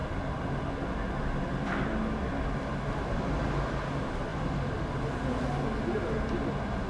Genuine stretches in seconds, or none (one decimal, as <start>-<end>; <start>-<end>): 0.0-6.9